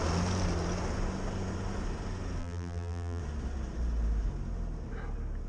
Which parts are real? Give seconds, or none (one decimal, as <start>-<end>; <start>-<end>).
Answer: 0.0-2.4; 3.2-5.5